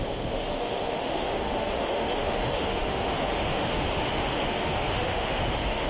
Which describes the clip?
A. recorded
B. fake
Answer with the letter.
B